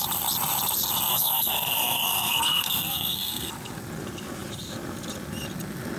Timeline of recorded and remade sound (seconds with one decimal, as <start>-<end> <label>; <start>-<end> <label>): 0.0-1.1 recorded; 1.1-3.5 remade; 3.5-6.0 recorded